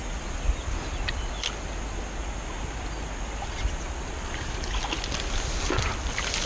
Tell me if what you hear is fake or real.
real